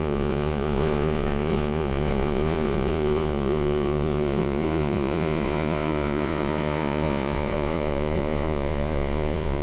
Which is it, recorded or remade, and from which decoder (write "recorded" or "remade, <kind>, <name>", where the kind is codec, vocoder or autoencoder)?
remade, vocoder, Vocos